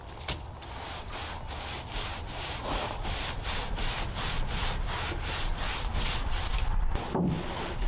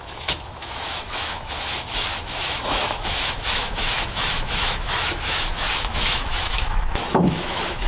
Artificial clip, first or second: second